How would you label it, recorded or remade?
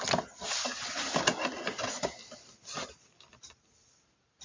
recorded